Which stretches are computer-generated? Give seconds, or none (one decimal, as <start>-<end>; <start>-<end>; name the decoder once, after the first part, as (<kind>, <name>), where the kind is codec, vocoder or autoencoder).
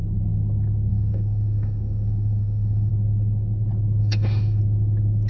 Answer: 0.9-2.9 (autoencoder, DAC-VAE); 4.0-4.6